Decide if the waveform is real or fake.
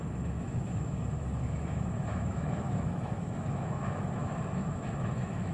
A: fake